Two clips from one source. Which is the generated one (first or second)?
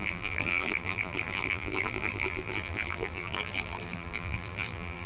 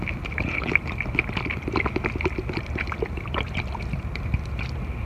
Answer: first